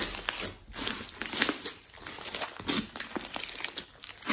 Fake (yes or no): no